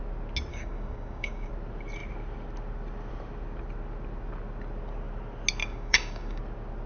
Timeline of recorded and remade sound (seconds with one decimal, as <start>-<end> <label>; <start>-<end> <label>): 0.0-0.5 recorded; 0.5-1.5 remade; 1.5-5.6 recorded; 5.6-6.4 remade; 6.4-6.9 recorded